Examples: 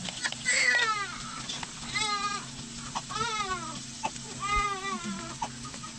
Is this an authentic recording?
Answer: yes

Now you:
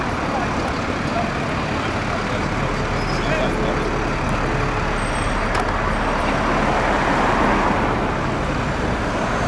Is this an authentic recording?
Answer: yes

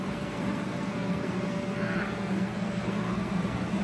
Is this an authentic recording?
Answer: no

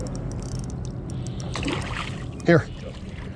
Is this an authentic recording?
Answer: yes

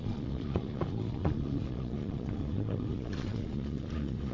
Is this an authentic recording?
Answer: no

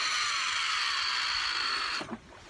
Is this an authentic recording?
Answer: yes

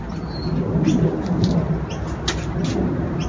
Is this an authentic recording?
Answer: yes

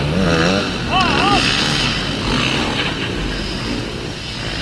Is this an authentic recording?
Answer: yes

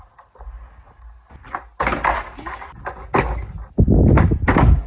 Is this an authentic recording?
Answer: yes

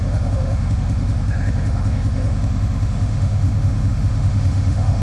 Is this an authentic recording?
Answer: no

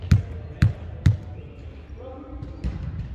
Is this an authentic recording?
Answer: yes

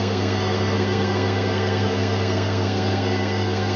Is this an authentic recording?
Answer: no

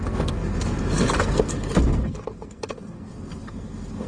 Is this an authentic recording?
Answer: no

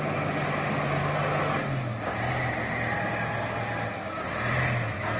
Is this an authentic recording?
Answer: yes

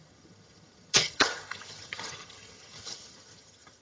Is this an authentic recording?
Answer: no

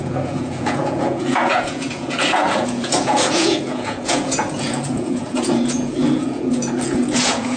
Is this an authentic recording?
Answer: no